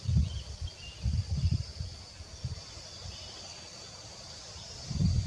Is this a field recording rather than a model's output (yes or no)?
yes